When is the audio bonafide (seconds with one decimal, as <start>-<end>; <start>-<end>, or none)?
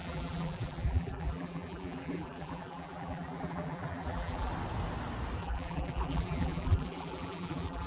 4.5-5.4